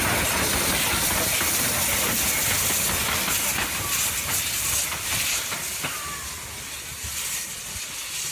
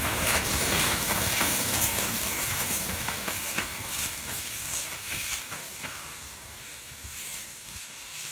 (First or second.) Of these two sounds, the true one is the first